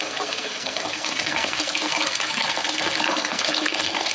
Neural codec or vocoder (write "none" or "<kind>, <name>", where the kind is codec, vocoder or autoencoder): codec, SNAC